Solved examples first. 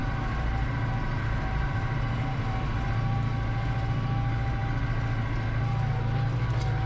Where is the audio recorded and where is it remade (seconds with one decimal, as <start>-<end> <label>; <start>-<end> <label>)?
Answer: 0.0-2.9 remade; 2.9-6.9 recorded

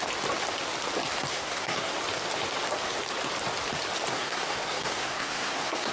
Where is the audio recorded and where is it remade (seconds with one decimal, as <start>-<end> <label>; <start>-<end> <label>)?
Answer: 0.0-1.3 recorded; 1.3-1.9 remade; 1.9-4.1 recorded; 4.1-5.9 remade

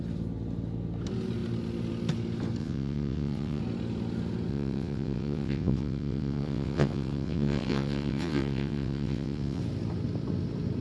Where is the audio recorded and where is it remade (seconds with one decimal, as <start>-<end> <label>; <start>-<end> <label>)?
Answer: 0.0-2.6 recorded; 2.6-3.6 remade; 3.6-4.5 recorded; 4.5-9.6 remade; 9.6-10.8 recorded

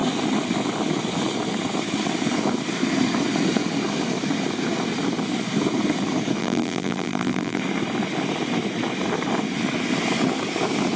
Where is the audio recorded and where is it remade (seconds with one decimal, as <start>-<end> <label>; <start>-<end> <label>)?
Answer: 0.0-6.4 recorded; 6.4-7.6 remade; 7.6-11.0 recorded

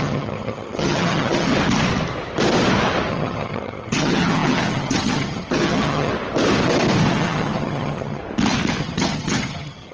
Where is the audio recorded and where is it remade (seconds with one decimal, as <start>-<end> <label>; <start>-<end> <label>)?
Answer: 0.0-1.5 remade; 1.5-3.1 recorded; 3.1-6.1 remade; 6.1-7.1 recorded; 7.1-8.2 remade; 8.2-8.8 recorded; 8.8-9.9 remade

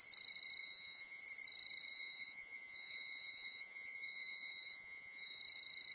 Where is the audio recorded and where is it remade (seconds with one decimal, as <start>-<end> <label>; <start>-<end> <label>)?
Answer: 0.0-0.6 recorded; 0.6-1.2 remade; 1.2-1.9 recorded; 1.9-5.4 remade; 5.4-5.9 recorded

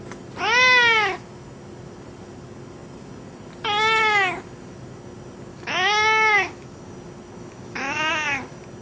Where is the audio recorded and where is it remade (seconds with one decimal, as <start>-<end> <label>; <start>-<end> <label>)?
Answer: 0.0-5.5 recorded; 5.5-6.9 remade; 6.9-7.4 recorded; 7.4-8.1 remade; 8.1-8.8 recorded